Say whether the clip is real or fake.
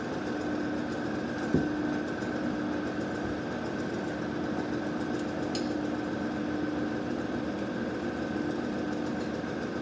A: real